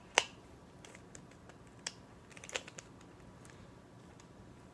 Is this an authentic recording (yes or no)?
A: yes